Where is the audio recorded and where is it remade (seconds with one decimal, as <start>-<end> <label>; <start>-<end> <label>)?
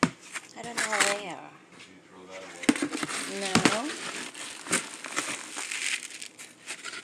0.0-7.0 recorded